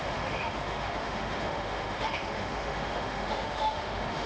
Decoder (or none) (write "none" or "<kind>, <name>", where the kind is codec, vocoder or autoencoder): autoencoder, DAC-VAE